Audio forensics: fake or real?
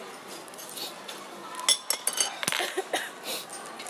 real